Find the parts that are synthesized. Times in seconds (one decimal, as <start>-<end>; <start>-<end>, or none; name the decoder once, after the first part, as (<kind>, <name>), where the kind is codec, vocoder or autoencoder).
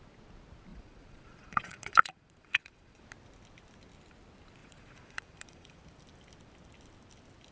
0.7-3.0 (vocoder, Vocos); 4.6-5.8